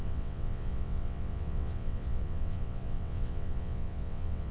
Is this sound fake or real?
fake